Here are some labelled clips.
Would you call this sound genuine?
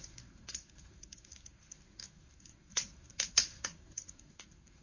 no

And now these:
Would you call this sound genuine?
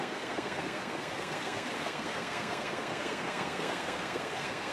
no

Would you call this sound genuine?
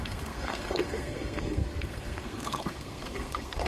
no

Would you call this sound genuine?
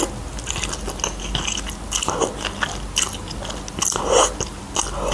yes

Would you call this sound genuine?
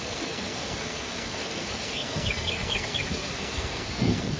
no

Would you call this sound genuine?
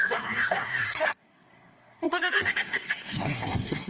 no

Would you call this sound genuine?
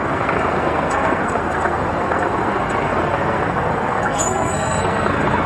no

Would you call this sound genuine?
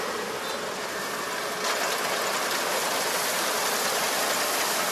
yes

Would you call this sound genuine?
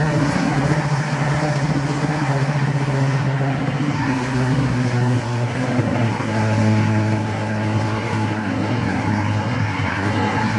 no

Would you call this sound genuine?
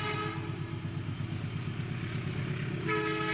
yes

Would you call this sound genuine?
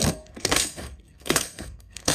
no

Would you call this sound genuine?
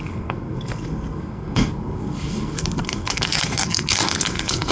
no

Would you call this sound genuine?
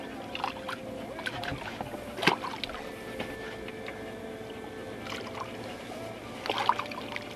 yes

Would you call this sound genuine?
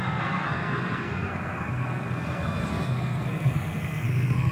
no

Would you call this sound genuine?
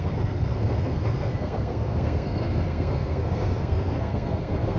no